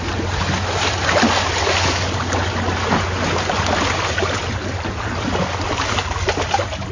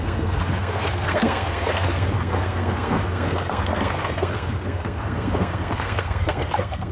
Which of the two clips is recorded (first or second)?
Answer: first